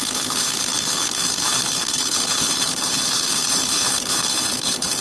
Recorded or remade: remade